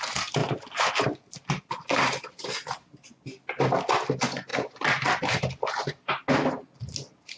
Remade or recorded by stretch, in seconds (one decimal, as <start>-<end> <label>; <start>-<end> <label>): 0.0-7.4 recorded